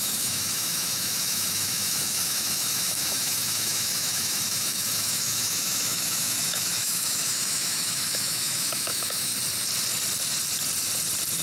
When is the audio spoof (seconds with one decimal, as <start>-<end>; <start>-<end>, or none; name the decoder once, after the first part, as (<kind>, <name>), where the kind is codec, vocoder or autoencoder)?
0.0-9.3 (autoencoder, DAC-VAE)